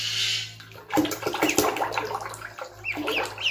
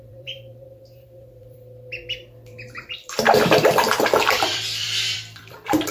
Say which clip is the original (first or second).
first